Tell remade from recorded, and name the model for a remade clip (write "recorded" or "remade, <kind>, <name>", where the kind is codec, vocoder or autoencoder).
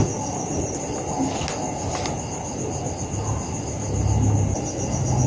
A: recorded